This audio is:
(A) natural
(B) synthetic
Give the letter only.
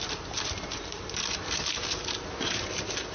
B